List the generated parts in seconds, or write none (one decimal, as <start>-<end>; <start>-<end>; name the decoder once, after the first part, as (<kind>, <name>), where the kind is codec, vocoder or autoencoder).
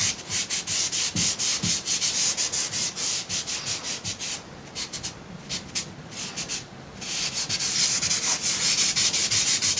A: none